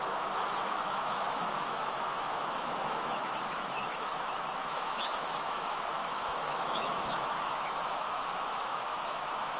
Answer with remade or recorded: remade